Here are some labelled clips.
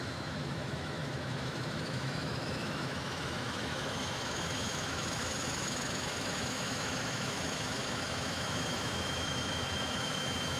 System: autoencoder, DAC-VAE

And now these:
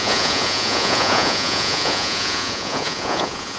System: vocoder, Vocos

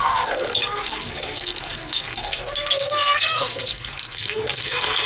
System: codec, SNAC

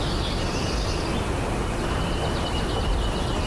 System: none